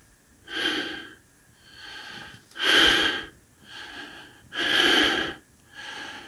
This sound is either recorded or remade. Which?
recorded